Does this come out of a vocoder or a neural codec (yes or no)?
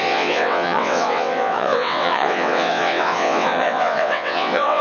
yes